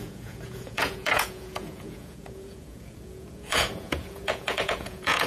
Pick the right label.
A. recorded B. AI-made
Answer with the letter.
B